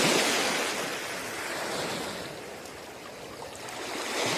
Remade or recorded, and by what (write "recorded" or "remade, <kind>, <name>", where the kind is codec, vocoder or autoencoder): recorded